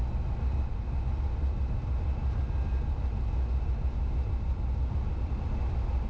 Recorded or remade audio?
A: recorded